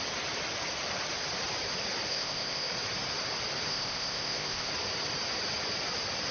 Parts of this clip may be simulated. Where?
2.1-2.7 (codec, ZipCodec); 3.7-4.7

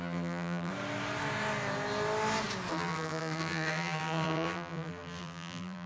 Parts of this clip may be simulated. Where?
0.0-0.7 (vocoder, BigVGAN v2); 2.7-5.9

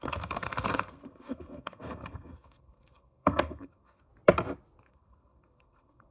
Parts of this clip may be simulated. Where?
0.0-4.1 (codec, SNAC); 4.9-6.1

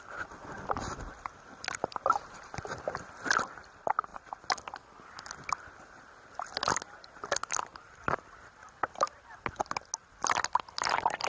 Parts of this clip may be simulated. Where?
none